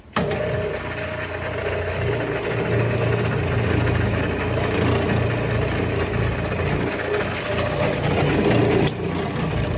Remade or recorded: recorded